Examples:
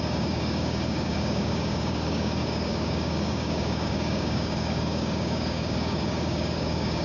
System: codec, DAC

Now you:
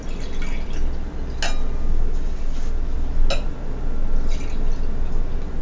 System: none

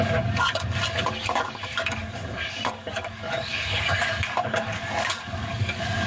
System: codec, DAC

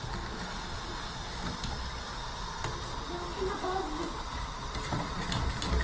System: none